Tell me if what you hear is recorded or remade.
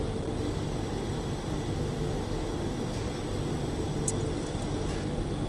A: recorded